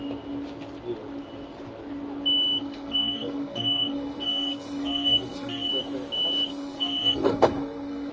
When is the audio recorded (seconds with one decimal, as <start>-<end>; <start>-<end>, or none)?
0.0-2.6; 5.7-6.5